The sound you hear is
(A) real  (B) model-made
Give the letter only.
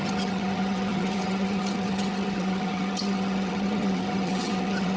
B